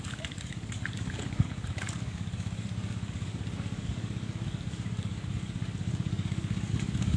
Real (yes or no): no